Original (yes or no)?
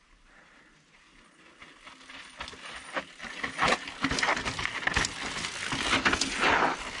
yes